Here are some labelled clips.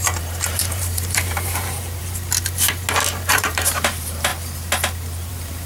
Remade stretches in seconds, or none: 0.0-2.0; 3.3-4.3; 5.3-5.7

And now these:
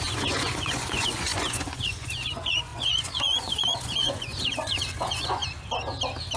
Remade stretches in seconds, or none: 0.0-5.4